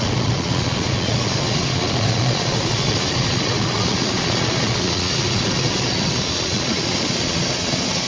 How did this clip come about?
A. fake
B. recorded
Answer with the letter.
A